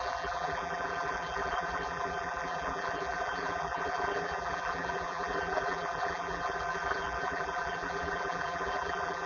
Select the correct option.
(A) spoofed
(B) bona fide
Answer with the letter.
A